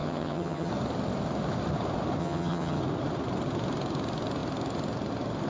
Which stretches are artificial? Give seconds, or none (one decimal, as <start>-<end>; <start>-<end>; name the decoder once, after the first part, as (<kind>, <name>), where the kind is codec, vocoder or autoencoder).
0.0-0.7 (vocoder, HiFi-GAN); 2.2-2.8